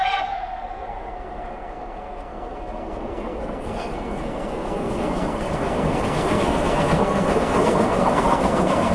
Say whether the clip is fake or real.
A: fake